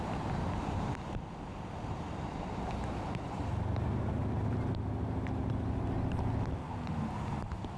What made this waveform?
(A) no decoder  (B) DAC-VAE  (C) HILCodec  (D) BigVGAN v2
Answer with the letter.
A